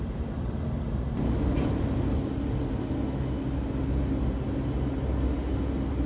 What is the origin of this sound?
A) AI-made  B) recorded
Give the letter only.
B